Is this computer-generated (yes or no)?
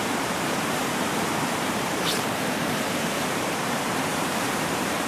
yes